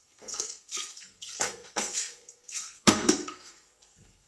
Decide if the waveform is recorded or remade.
remade